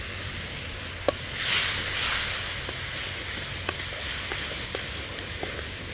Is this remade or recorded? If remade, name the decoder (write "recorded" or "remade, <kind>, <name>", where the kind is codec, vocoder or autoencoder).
recorded